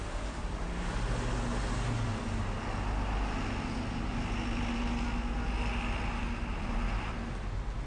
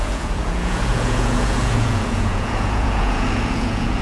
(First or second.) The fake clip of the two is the second